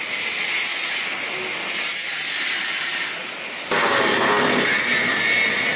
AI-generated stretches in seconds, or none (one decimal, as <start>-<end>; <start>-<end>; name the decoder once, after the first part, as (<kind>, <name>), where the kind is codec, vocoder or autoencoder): none